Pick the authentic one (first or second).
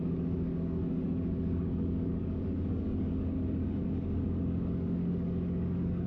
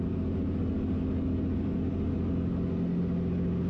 second